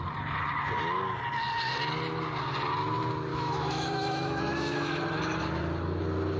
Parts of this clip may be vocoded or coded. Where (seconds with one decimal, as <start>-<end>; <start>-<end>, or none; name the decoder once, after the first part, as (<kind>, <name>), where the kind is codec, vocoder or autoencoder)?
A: 3.3-5.0 (autoencoder, DAC-VAE)